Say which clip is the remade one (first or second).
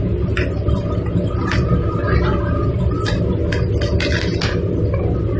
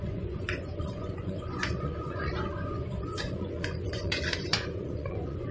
second